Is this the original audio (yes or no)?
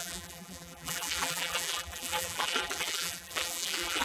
no